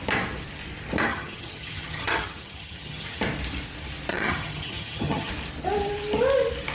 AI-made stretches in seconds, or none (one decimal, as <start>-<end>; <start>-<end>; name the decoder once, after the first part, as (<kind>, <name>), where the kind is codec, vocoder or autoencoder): 1.1-3.2 (vocoder, HiFi-GAN); 4.1-5.3